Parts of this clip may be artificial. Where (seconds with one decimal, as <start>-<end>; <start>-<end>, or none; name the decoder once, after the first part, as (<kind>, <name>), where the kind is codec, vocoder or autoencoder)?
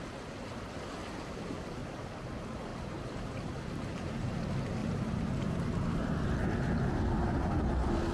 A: 2.7-4.3 (vocoder, BigVGAN v2); 4.8-5.5